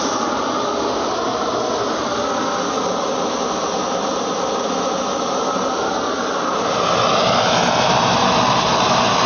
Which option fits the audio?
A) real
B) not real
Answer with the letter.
A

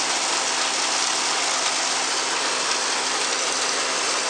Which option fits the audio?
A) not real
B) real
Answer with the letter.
B